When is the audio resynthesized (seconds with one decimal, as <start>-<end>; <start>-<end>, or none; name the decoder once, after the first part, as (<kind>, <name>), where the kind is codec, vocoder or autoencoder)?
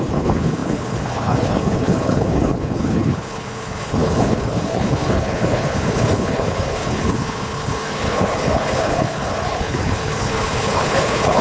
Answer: 0.0-11.4 (codec, HILCodec)